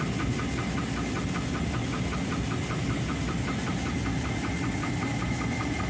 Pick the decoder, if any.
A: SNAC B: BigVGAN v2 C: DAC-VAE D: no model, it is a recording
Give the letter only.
D